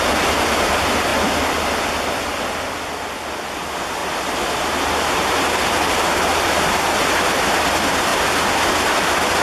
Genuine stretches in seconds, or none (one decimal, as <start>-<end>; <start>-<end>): 0.0-4.0; 6.8-9.4